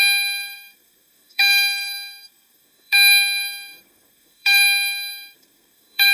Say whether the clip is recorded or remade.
remade